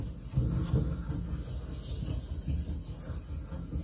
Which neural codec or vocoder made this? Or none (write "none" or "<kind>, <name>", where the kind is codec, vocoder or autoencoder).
none